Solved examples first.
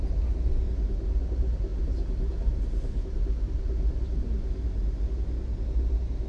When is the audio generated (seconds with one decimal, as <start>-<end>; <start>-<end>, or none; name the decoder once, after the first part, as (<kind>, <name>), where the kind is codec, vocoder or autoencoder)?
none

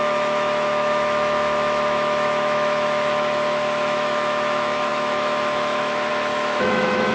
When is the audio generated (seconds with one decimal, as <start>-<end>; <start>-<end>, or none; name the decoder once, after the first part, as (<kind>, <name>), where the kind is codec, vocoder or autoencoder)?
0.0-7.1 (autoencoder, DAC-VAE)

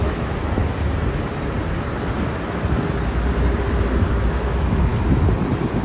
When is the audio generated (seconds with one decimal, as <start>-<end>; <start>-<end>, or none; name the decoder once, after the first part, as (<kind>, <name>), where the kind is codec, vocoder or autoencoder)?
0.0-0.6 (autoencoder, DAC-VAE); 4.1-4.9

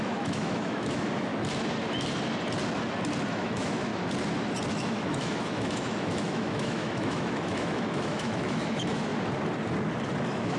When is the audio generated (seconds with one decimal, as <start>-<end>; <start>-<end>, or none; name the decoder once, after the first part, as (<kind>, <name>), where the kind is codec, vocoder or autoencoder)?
0.0-1.3 (autoencoder, DAC-VAE); 3.3-3.9; 4.7-9.1; 10.2-10.6

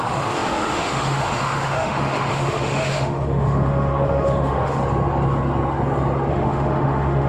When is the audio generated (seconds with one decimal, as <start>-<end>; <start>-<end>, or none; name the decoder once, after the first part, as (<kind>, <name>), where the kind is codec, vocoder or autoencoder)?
0.0-4.8 (autoencoder, DAC-VAE); 6.3-7.3

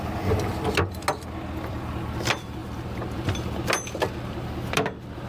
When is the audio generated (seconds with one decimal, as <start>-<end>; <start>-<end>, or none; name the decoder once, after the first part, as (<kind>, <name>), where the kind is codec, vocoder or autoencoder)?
none

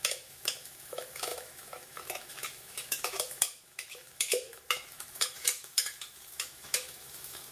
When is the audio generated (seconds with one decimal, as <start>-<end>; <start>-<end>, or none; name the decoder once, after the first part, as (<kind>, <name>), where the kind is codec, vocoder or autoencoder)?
0.0-7.5 (autoencoder, DAC-VAE)

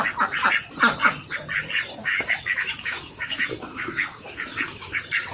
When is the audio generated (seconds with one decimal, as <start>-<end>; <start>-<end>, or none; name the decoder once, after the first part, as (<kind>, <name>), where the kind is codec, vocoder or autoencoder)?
2.0-5.3 (autoencoder, DAC-VAE)